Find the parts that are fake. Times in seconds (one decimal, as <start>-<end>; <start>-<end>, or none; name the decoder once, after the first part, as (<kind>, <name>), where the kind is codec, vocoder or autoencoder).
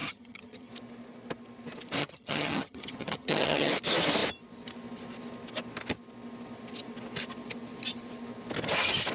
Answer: 0.0-0.7 (vocoder, HiFi-GAN); 2.0-3.7